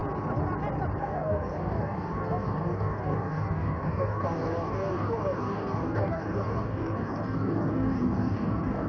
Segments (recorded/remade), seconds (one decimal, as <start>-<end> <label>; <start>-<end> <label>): 0.0-1.0 recorded; 1.0-8.9 remade